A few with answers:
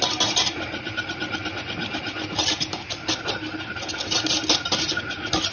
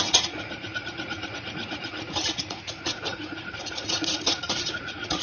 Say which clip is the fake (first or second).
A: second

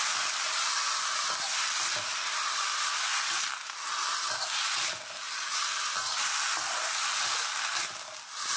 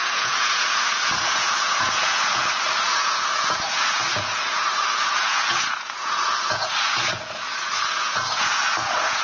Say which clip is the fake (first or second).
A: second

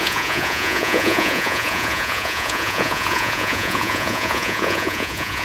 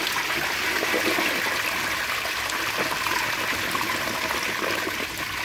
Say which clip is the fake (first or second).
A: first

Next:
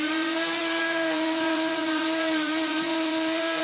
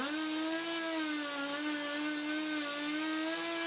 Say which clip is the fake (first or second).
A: first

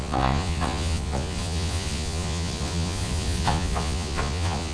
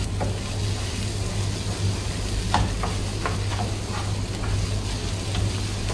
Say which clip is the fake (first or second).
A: first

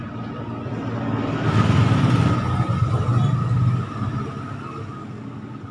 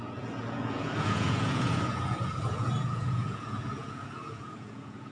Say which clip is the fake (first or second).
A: second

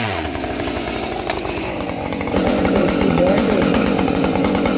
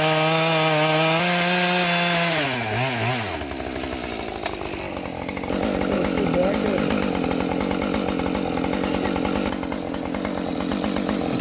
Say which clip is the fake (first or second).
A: first